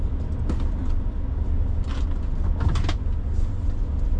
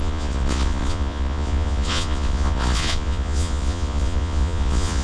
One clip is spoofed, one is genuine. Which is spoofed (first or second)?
second